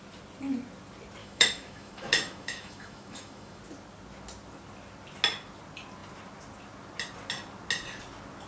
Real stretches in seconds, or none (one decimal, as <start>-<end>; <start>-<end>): 0.0-1.2; 3.6-8.5